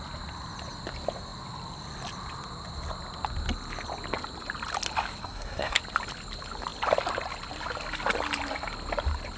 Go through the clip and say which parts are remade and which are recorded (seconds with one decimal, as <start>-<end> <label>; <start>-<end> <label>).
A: 0.0-5.2 recorded; 5.2-5.8 remade; 5.8-9.4 recorded